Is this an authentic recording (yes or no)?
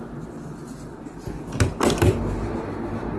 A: yes